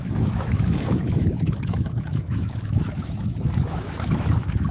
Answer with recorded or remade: remade